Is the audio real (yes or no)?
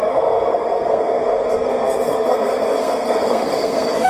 no